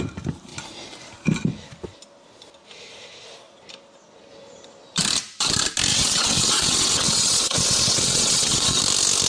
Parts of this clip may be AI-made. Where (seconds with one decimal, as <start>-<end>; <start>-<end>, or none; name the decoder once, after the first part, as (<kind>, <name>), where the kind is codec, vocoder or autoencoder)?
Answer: 5.9-8.8 (vocoder, WaveNeXt)

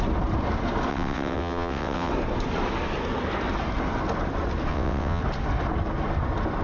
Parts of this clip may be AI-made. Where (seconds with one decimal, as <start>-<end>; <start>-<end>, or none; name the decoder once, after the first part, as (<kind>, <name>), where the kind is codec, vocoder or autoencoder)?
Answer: 0.9-2.1 (vocoder, WaveNeXt); 4.7-5.2